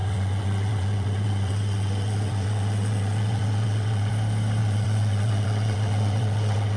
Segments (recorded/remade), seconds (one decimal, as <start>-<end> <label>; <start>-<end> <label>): 0.0-4.1 remade; 4.1-4.6 recorded; 4.6-6.8 remade